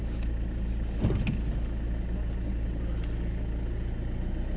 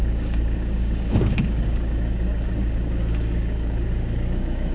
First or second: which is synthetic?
second